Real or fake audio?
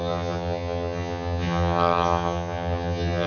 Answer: fake